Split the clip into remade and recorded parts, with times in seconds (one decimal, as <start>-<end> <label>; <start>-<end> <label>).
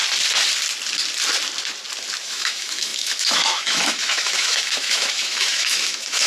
0.0-2.2 recorded; 2.2-6.3 remade